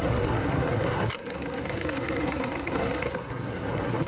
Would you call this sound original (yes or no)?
no